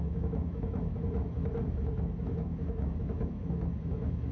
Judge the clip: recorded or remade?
remade